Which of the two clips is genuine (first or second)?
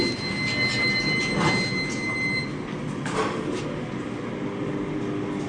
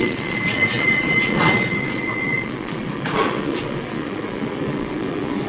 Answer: first